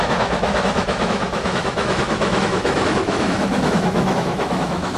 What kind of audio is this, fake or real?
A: fake